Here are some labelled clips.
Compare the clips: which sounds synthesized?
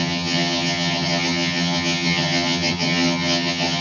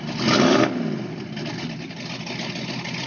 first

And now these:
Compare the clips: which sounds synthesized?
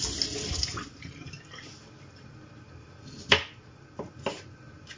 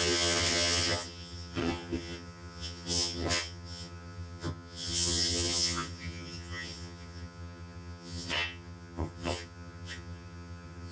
second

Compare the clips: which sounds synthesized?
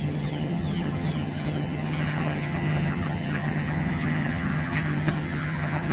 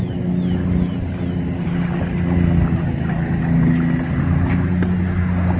first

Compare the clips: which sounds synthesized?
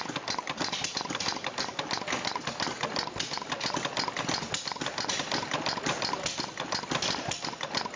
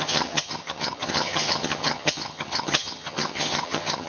second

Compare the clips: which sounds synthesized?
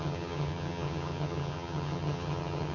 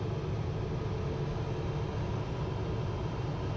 first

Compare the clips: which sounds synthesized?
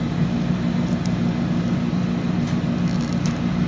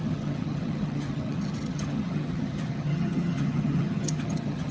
second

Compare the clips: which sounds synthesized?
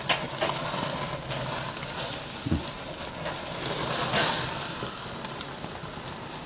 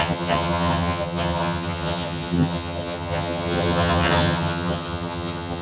second